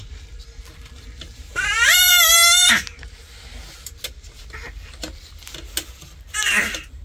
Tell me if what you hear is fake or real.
real